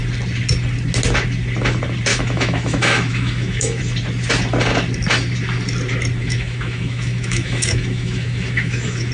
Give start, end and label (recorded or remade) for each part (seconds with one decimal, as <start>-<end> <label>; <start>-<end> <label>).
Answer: 0.0-2.1 recorded; 2.1-3.8 remade; 3.8-6.2 recorded; 6.2-9.1 remade